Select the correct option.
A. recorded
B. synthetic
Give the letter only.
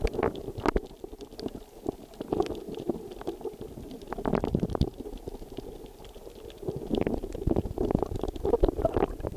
A